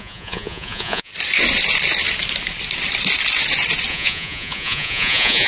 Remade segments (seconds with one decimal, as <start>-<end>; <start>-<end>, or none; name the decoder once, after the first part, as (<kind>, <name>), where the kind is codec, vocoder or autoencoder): 0.0-1.1 (vocoder, Vocos); 3.9-5.5